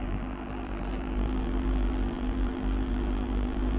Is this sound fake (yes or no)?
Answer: yes